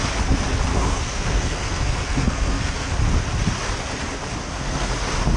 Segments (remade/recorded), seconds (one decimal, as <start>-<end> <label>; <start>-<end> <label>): 0.0-0.7 recorded; 0.7-2.9 remade; 2.9-4.4 recorded; 4.4-4.9 remade; 4.9-5.4 recorded